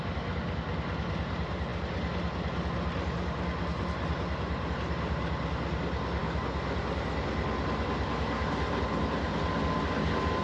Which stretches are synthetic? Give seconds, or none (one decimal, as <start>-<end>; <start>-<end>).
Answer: none